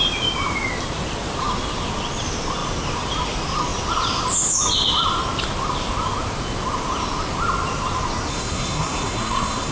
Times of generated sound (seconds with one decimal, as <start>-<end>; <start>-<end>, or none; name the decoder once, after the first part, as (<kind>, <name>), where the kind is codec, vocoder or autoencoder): 8.3-9.7 (codec, SNAC)